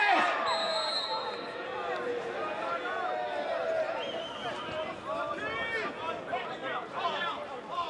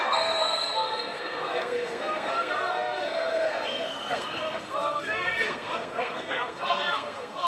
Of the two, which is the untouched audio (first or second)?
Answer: first